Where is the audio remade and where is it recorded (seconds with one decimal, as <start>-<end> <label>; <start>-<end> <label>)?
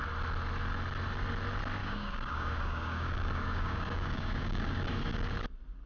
0.0-1.8 recorded; 1.8-5.3 remade; 5.3-5.9 recorded